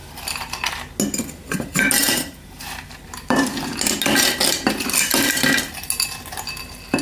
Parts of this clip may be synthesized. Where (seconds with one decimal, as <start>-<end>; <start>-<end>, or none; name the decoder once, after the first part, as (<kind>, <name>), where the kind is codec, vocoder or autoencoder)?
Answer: 2.0-3.6 (vocoder, BigVGAN v2)